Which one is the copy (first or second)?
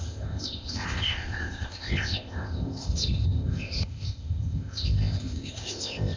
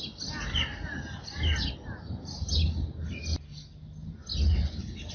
first